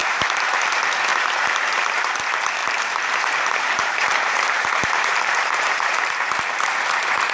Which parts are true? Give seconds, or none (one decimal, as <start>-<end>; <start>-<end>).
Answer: 0.7-1.1; 1.9-2.6; 6.4-7.3